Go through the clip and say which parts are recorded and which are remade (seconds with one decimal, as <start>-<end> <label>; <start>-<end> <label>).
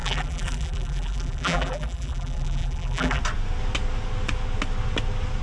0.0-3.2 remade; 3.2-5.4 recorded